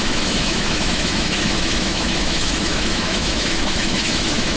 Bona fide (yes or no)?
no